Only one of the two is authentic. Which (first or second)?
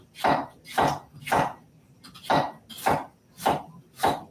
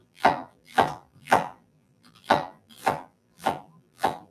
first